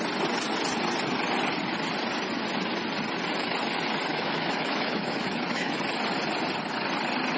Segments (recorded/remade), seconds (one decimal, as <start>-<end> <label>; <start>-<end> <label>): 0.0-4.1 recorded; 4.1-5.8 remade; 5.8-7.4 recorded